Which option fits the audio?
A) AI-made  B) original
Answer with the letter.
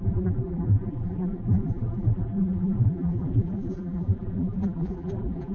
A